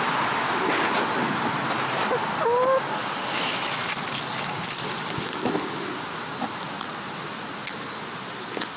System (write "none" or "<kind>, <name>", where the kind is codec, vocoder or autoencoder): none